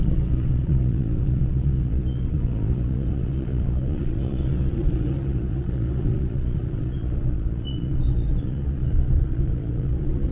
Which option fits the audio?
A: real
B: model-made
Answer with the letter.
B